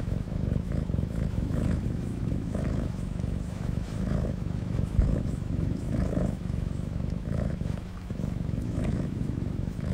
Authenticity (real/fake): fake